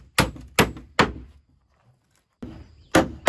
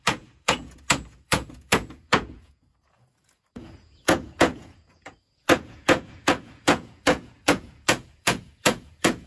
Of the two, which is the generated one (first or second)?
second